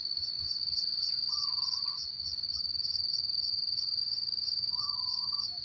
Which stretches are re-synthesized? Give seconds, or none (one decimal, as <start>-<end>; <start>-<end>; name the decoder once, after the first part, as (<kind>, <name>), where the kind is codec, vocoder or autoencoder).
0.0-0.6 (autoencoder, DAC-VAE); 4.0-5.6